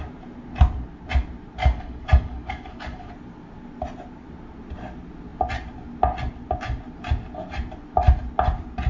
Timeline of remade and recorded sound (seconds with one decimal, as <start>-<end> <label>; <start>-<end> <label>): 0.0-1.6 recorded; 1.6-3.1 remade; 3.1-8.9 recorded